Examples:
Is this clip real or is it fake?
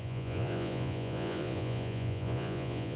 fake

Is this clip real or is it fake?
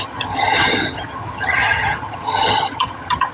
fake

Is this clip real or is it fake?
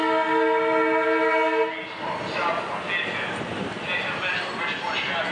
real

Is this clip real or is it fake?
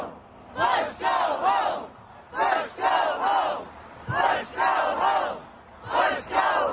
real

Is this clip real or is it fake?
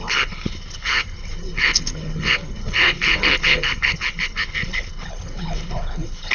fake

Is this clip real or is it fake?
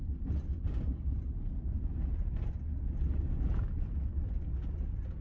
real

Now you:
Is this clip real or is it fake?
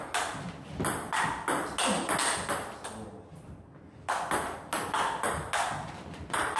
real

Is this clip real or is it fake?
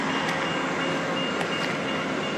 real